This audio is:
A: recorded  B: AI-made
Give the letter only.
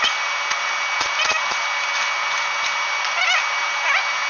A